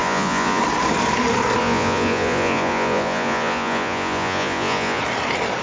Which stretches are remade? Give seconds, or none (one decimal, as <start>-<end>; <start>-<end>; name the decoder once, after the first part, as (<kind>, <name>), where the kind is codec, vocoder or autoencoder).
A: 0.0-0.6 (vocoder, Vocos); 1.6-5.0